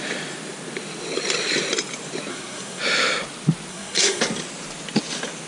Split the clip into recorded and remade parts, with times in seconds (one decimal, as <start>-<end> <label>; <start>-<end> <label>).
0.0-2.3 recorded; 2.3-2.8 remade; 2.8-3.7 recorded; 3.7-4.2 remade; 4.2-5.5 recorded